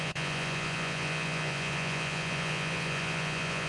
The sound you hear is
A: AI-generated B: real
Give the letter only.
A